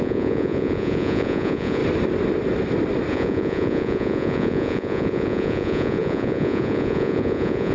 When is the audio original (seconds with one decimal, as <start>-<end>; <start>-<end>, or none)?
1.8-3.1